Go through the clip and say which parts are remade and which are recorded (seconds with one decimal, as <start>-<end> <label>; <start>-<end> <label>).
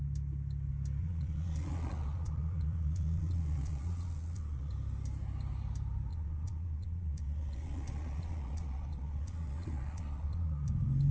0.0-1.0 recorded; 1.0-4.7 remade; 4.7-6.1 recorded; 6.1-10.7 remade; 10.7-11.1 recorded